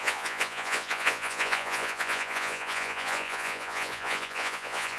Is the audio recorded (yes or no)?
no